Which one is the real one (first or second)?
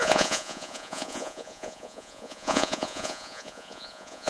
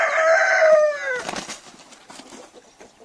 second